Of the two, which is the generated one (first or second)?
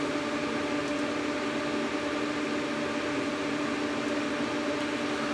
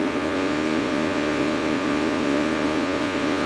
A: second